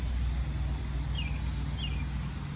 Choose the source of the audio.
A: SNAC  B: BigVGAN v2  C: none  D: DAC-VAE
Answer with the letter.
C